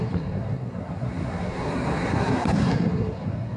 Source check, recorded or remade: remade